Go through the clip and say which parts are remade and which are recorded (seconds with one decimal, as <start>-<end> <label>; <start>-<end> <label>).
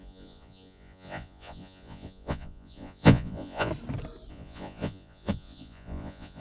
0.0-3.7 remade; 3.7-4.3 recorded; 4.3-6.4 remade